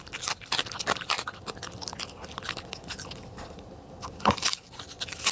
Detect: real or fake real